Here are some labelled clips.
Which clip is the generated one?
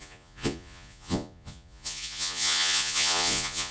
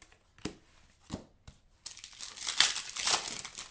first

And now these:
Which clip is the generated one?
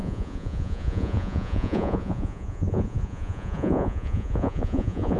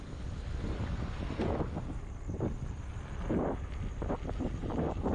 first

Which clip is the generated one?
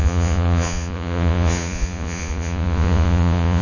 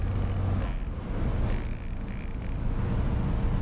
first